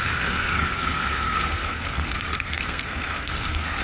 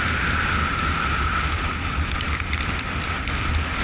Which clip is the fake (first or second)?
first